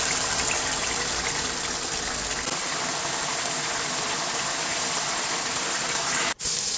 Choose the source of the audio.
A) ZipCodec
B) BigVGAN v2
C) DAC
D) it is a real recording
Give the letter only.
D